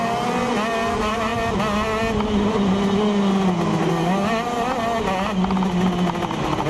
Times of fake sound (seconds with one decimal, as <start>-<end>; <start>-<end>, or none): none